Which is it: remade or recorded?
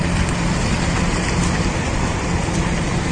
recorded